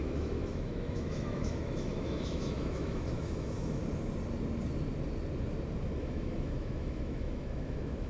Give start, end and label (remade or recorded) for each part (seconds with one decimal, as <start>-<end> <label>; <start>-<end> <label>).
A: 0.0-3.8 remade; 3.8-6.0 recorded; 6.0-8.1 remade